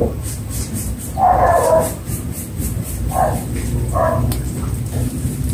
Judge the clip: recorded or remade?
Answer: recorded